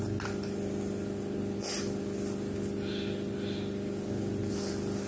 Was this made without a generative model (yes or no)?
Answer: yes